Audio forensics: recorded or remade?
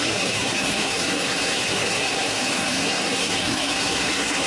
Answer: remade